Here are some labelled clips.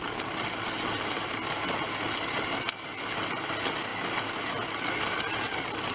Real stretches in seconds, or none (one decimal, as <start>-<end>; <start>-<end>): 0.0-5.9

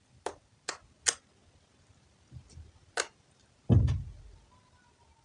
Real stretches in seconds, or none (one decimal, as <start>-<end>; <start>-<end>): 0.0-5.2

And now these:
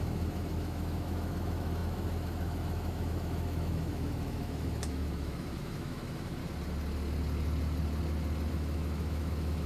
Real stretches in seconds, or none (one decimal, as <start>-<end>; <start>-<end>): 6.4-8.5

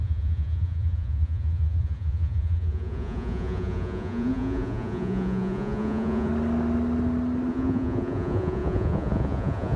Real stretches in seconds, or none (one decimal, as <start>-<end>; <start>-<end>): 6.3-7.5

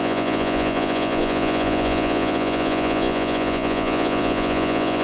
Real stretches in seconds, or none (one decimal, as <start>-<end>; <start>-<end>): none